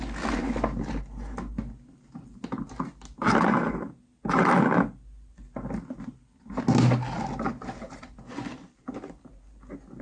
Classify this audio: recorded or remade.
recorded